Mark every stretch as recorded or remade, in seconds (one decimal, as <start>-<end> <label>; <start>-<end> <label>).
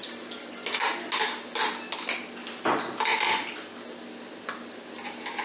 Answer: 0.0-5.4 recorded